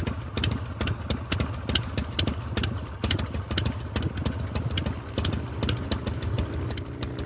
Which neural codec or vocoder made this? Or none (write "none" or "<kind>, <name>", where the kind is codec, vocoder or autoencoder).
none